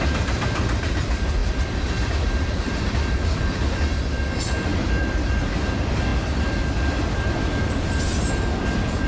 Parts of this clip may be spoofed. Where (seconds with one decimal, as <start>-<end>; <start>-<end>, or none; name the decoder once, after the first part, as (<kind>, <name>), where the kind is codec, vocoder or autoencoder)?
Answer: 0.0-9.1 (vocoder, BigVGAN v2)